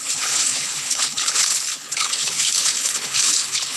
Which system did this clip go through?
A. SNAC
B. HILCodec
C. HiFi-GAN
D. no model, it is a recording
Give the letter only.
B